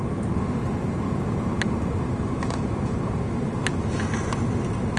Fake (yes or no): no